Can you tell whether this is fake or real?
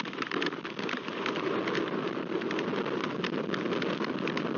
real